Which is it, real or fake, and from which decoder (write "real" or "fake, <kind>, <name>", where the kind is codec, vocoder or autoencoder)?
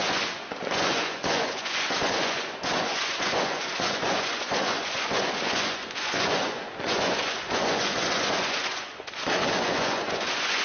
fake, vocoder, Vocos